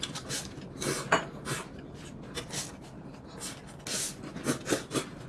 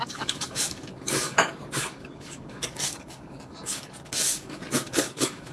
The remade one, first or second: second